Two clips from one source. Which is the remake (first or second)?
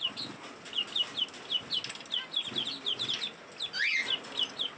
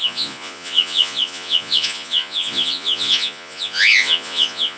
second